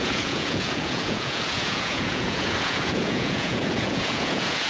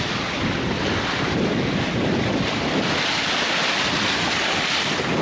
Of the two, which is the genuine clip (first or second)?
second